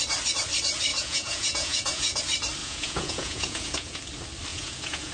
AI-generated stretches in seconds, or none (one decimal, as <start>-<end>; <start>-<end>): 0.9-2.2; 2.6-4.0; 4.5-5.1